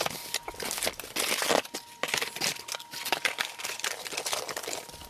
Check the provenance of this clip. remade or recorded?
recorded